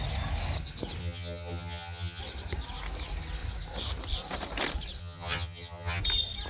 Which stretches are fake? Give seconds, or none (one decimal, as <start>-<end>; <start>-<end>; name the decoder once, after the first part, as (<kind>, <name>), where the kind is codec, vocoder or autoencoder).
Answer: 1.0-2.2 (vocoder, HiFi-GAN); 5.0-6.0